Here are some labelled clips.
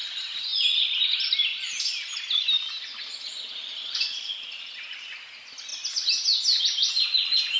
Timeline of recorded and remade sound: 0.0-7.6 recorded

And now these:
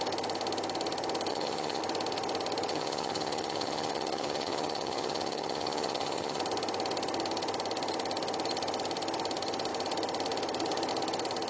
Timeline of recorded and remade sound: 0.0-1.3 recorded; 1.3-1.8 remade; 1.8-2.7 recorded; 2.7-6.4 remade; 6.4-11.5 recorded

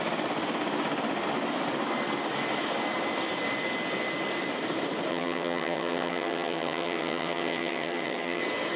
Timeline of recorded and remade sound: 0.0-5.1 recorded; 5.1-8.4 remade; 8.4-8.8 recorded